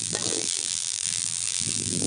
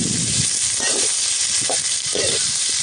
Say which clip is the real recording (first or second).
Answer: second